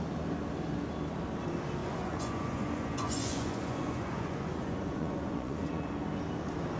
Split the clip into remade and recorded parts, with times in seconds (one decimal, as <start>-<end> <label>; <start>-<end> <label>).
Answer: 0.0-1.8 recorded; 1.8-5.9 remade; 5.9-6.8 recorded